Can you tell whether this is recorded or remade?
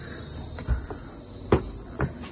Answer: recorded